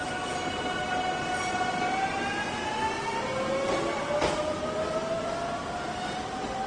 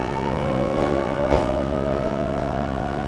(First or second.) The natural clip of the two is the first